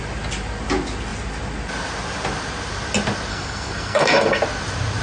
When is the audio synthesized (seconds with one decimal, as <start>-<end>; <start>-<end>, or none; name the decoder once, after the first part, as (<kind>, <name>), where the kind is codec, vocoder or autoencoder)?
3.3-4.4 (codec, SNAC)